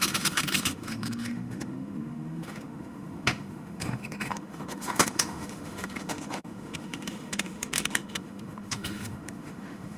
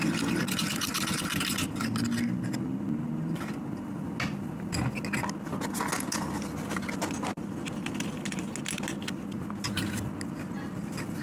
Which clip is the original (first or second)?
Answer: second